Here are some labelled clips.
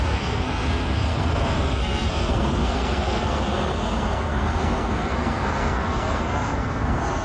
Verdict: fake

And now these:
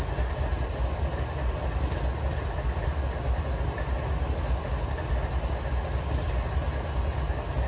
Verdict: real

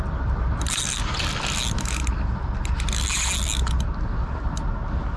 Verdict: real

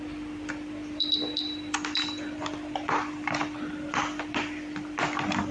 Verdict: fake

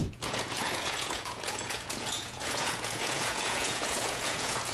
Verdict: fake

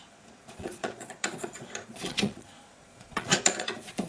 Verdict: fake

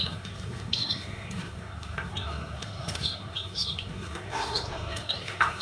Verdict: fake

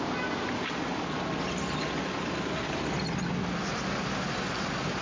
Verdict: real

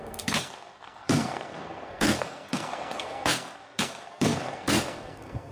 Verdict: fake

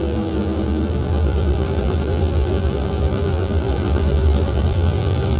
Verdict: fake